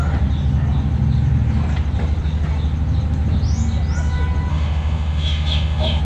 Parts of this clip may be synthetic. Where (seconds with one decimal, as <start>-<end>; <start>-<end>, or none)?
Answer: 4.5-6.0